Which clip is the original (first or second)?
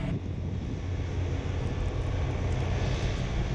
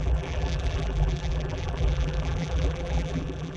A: first